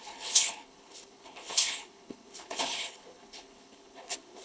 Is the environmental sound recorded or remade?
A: remade